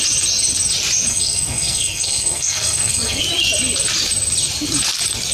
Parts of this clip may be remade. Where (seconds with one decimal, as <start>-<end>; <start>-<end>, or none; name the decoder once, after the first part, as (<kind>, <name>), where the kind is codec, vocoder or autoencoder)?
1.1-3.2 (codec, SNAC)